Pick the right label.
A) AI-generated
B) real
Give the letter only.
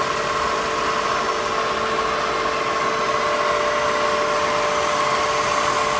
B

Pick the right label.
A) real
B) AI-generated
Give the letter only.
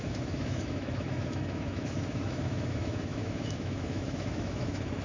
B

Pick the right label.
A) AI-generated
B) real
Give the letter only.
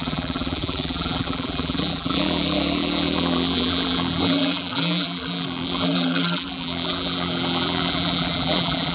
A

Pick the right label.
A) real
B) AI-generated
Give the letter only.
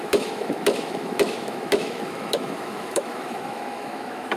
B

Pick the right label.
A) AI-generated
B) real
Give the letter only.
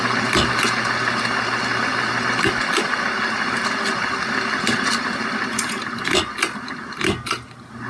B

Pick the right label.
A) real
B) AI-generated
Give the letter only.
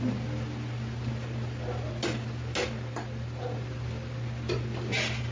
A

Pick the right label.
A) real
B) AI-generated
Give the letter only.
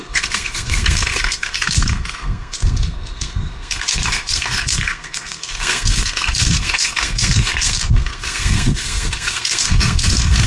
B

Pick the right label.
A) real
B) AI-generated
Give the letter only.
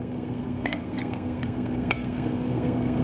B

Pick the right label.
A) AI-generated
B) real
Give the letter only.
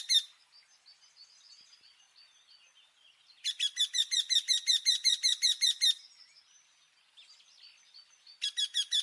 B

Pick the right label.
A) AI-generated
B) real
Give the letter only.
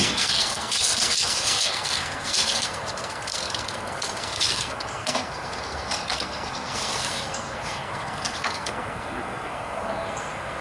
A